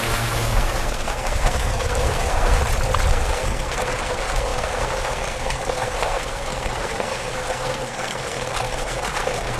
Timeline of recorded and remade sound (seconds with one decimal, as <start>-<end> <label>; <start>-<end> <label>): 0.0-2.6 remade; 2.6-3.1 recorded; 3.1-9.6 remade